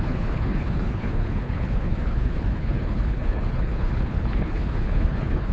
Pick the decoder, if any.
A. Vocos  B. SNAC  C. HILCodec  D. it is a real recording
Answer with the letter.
C